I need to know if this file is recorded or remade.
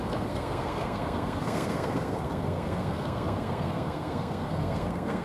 remade